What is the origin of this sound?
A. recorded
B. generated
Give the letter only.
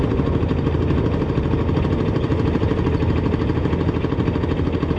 A